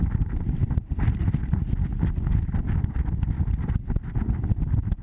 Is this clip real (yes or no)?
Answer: yes